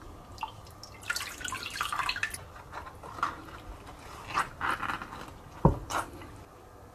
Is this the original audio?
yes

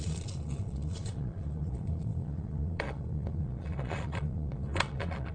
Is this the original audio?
no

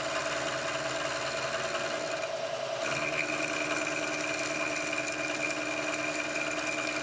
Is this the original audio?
yes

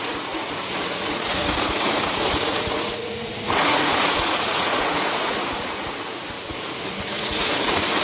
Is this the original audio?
no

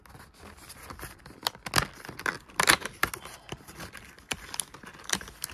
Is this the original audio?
yes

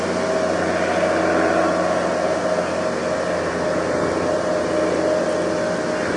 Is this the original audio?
yes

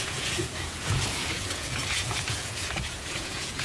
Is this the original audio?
no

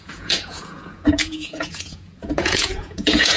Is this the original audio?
no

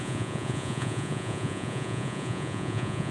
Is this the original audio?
no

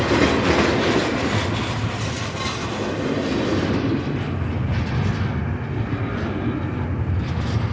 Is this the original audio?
yes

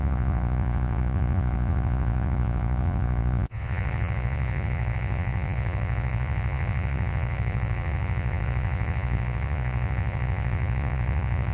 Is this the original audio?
no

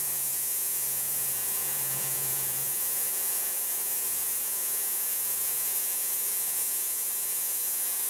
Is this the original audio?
no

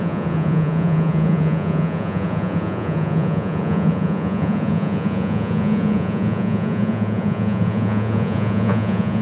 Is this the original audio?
no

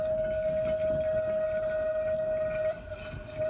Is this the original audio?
yes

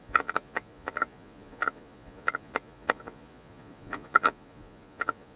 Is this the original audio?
no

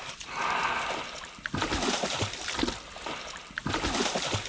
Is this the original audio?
yes